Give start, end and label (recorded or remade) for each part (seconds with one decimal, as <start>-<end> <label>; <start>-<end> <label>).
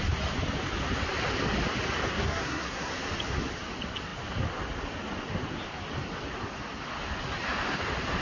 0.0-2.1 recorded; 2.1-2.9 remade; 2.9-8.2 recorded